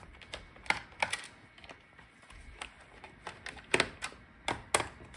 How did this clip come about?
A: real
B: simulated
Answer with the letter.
A